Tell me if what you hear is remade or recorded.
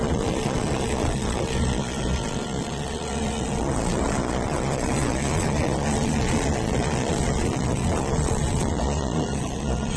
remade